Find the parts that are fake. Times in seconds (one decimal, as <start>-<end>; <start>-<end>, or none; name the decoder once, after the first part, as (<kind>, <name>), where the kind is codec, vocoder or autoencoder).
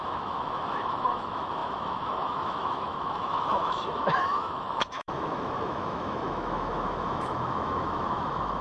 0.0-8.6 (autoencoder, DAC-VAE)